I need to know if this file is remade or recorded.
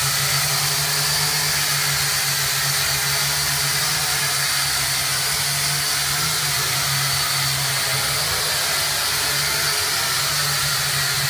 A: recorded